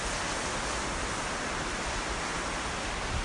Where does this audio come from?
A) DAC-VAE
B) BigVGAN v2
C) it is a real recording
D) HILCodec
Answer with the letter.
C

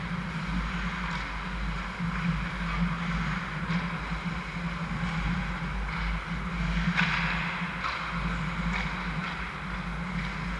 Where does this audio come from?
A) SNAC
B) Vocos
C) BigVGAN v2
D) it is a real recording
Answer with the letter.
D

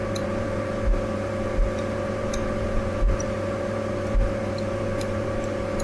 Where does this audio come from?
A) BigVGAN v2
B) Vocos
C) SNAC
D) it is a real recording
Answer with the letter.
A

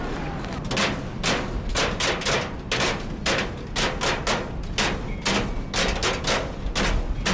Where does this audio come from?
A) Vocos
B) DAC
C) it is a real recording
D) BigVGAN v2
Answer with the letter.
C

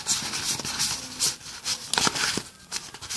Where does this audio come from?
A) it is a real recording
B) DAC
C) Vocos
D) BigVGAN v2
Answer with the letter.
A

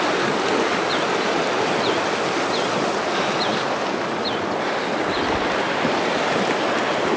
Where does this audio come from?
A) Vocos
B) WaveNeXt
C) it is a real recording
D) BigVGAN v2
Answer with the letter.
C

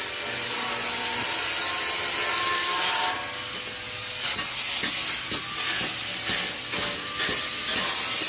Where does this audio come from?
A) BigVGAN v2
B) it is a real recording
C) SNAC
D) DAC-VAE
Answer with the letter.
B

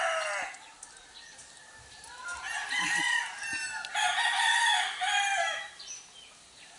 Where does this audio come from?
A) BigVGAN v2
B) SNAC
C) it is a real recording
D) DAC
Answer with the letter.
C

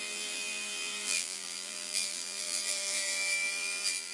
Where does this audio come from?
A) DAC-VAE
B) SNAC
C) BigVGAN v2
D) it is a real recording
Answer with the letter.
C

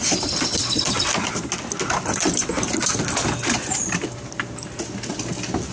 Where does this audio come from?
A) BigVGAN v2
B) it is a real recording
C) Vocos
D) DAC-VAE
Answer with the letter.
B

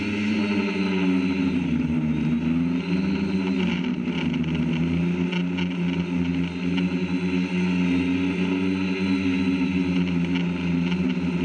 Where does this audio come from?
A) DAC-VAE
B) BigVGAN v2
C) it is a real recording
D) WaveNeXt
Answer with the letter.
C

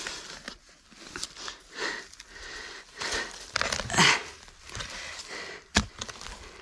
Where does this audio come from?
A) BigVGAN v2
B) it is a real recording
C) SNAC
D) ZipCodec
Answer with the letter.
B